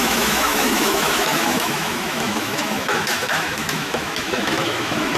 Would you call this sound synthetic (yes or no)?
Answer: yes